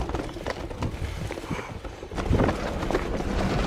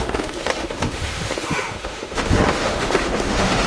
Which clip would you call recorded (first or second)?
first